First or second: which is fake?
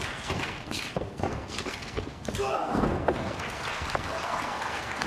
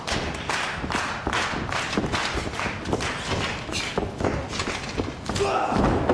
first